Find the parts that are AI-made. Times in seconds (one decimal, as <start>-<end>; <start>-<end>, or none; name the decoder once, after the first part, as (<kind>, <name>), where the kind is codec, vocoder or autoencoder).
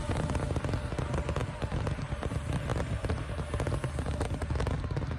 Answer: none